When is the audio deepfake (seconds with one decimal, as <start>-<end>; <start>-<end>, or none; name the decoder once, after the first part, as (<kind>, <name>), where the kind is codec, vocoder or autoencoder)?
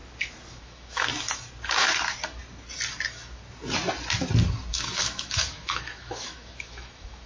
0.6-1.1 (autoencoder, DAC-VAE); 4.7-7.3